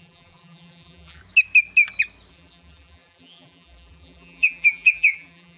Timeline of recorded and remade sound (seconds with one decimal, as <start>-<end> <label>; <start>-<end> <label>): 0.0-1.2 remade; 1.2-2.3 recorded; 2.3-5.6 remade